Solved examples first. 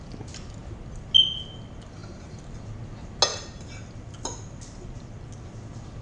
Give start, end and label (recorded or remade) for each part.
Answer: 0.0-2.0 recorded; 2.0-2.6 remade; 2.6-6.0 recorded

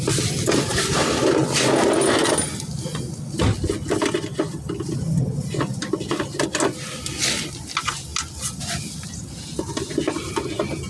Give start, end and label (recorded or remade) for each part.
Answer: 0.0-10.9 recorded

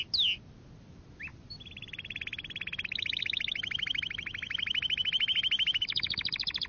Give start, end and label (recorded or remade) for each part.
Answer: 0.0-6.7 recorded

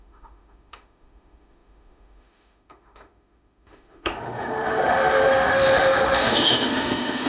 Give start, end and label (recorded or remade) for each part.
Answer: 0.0-7.3 remade

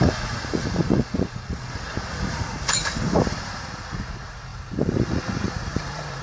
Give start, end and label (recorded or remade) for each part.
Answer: 0.0-6.2 remade